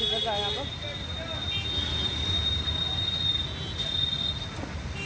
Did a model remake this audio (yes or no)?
no